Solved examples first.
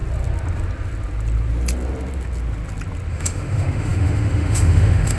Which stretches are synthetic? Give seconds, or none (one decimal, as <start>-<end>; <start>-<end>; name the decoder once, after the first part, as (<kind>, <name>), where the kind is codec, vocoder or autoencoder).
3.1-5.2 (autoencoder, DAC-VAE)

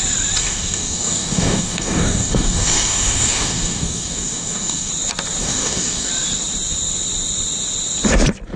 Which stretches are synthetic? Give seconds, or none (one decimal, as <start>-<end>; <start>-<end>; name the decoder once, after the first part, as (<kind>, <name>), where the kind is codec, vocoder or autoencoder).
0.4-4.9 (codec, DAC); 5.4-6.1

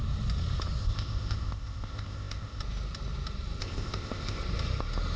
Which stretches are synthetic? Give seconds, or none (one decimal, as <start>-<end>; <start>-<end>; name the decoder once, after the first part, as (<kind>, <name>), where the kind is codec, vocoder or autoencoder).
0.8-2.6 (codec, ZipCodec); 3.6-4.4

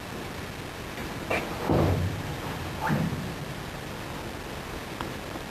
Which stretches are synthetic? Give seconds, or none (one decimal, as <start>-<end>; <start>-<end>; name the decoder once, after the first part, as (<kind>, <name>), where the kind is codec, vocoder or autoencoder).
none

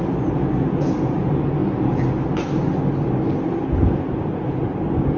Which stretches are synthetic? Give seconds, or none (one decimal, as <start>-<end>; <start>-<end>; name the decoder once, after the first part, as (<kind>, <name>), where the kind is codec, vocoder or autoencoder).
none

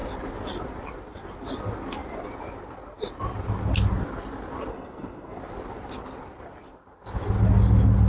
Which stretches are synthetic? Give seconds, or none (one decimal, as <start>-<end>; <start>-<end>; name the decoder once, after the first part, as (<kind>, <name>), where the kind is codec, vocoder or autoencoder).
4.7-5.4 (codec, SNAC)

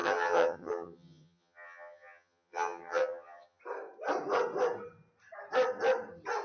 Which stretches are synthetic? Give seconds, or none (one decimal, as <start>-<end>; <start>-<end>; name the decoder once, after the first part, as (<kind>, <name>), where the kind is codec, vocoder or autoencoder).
0.0-3.6 (vocoder, HiFi-GAN)